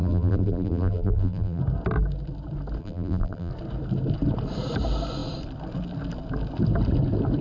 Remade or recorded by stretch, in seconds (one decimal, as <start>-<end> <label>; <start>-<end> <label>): 0.0-1.6 remade; 1.6-2.8 recorded; 2.8-3.5 remade; 3.5-7.4 recorded